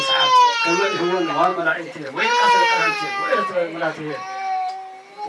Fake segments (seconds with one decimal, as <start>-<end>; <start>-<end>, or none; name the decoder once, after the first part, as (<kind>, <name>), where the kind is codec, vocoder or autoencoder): 1.5-3.1 (vocoder, BigVGAN v2)